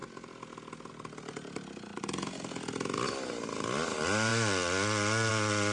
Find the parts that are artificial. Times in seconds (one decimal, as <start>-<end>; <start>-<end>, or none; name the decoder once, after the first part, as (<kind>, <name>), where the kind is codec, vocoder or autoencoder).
none